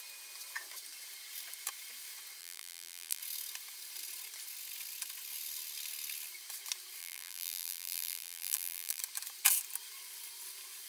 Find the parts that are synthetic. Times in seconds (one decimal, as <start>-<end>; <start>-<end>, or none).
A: 2.4-3.2; 7.0-9.0